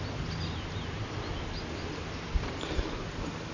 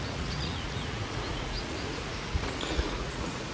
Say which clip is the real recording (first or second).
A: first